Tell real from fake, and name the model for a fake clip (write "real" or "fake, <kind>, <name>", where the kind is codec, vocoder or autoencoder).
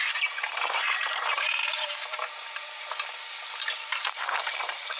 fake, vocoder, BigVGAN v2